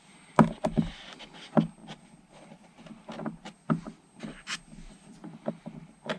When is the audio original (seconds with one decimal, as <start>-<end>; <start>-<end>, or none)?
0.0-6.2